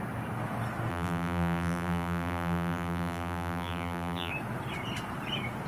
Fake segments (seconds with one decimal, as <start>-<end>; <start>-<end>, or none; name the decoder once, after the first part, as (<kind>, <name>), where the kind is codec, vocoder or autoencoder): 0.9-4.3 (vocoder, BigVGAN v2)